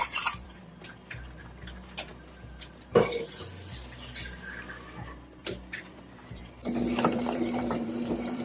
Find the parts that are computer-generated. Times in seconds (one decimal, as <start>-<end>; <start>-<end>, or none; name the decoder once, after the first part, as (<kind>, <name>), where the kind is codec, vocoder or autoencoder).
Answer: 0.0-0.6 (vocoder, BigVGAN v2); 5.4-8.4